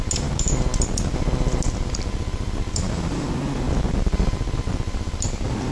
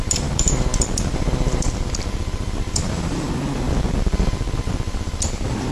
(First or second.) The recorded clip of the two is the first